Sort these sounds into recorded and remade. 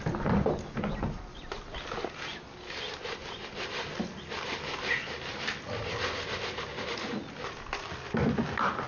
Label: recorded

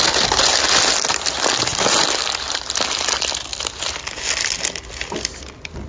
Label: recorded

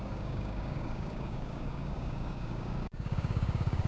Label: remade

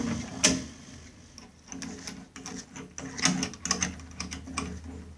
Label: recorded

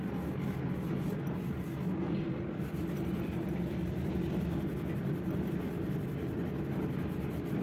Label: recorded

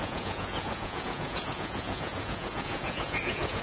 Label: remade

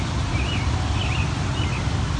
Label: recorded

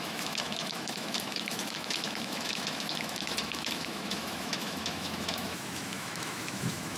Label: remade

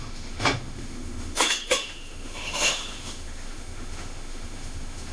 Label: remade